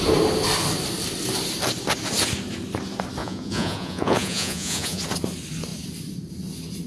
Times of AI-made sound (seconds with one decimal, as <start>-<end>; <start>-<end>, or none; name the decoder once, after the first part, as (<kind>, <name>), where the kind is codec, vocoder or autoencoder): 3.2-5.0 (vocoder, Vocos)